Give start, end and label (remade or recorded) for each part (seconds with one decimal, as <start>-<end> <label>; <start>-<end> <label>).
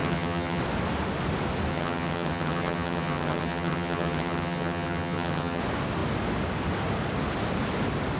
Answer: 0.0-0.6 remade; 0.6-1.7 recorded; 1.7-5.6 remade; 5.6-8.2 recorded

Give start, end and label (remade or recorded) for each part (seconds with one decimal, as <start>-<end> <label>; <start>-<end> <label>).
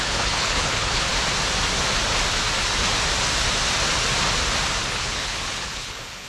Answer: 0.0-1.1 remade; 1.1-4.9 recorded; 4.9-6.3 remade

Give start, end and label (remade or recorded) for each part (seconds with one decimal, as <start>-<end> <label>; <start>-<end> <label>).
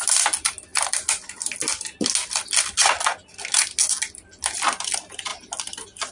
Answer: 0.0-6.1 recorded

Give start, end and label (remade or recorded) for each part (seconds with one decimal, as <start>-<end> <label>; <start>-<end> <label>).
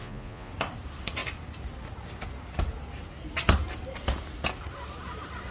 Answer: 0.0-0.5 remade; 0.5-5.5 recorded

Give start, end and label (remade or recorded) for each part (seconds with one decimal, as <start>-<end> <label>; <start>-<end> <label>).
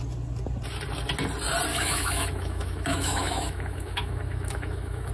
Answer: 0.0-1.7 recorded; 1.7-5.1 remade